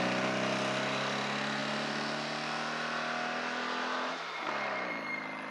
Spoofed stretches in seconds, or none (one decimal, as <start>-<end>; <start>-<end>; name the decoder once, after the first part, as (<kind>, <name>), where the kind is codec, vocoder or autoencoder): none

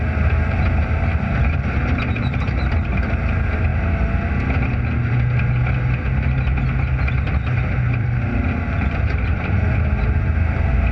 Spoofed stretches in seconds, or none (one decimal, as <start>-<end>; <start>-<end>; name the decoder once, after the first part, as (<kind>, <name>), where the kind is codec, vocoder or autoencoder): 0.0-3.7 (vocoder, BigVGAN v2); 8.0-10.9